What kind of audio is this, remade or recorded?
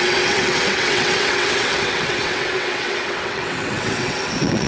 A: remade